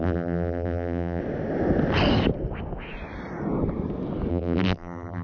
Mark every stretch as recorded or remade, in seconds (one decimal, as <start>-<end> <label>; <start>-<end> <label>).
0.0-1.2 remade; 1.2-4.3 recorded; 4.3-5.2 remade